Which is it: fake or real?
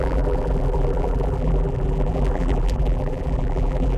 fake